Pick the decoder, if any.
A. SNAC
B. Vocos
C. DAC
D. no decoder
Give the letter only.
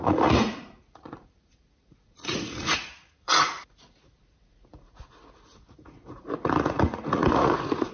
B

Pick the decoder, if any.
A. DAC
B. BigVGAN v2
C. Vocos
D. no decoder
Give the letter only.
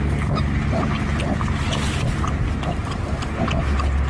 D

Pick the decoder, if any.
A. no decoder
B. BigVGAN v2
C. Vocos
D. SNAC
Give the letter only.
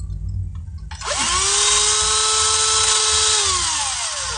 A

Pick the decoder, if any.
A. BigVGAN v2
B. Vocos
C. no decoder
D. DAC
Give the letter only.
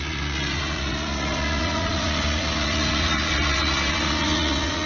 B